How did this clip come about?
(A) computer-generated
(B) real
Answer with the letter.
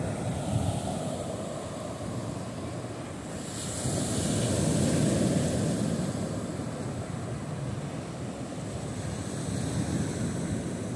B